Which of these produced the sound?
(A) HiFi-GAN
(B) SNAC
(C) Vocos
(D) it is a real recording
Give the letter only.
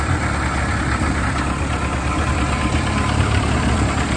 D